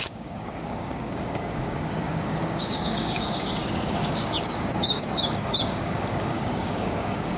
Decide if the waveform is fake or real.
fake